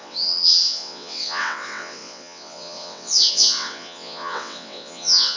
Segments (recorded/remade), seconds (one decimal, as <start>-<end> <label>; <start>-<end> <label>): 0.0-5.4 remade